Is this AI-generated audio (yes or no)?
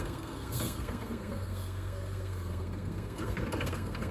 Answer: yes